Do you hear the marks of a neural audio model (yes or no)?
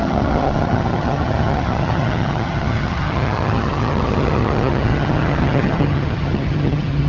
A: yes